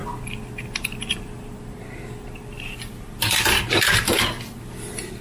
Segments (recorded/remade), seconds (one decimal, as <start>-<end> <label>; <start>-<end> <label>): 0.0-5.2 recorded

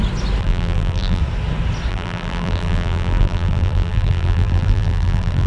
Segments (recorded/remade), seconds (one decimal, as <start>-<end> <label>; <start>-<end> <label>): 0.0-0.4 recorded; 0.4-1.2 remade; 1.2-1.9 recorded; 1.9-5.5 remade

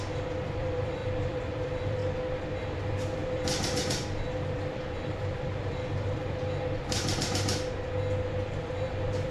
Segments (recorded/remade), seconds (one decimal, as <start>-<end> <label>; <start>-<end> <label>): 0.0-2.0 remade; 2.0-2.6 recorded; 2.6-7.5 remade; 7.5-8.6 recorded; 8.6-9.3 remade

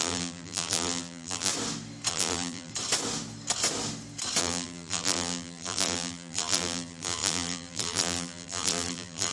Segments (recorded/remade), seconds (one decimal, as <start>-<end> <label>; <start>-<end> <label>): 0.0-1.5 remade; 1.5-2.1 recorded; 2.1-2.7 remade; 2.7-4.4 recorded; 4.4-9.3 remade

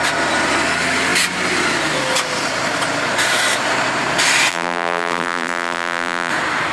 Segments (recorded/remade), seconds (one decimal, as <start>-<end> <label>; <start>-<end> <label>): 0.0-4.5 recorded; 4.5-6.3 remade; 6.3-6.7 recorded

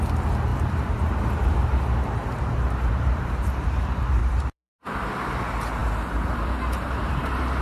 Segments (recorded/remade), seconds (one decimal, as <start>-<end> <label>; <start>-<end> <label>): 0.0-0.5 recorded; 0.5-3.8 remade; 3.8-4.2 recorded; 4.2-4.8 remade; 4.8-7.6 recorded

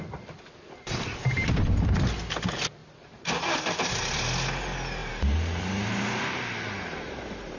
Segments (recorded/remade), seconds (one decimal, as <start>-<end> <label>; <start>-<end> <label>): 0.0-2.8 recorded; 2.8-3.9 remade; 3.9-5.0 recorded; 5.0-6.2 remade; 6.2-7.6 recorded

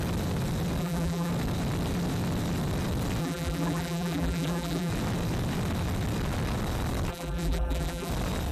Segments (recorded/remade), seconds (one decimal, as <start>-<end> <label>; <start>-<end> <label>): 0.0-0.8 recorded; 0.8-1.3 remade; 1.3-3.2 recorded; 3.2-4.9 remade; 4.9-7.1 recorded; 7.1-8.1 remade; 8.1-8.5 recorded